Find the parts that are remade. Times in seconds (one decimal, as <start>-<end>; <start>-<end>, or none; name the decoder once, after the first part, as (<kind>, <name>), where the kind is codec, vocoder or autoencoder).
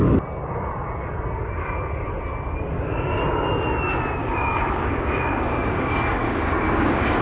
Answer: 2.7-3.2 (codec, DAC); 4.2-7.2